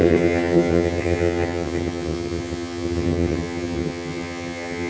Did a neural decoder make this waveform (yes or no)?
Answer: yes